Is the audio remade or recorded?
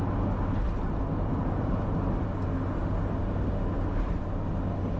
recorded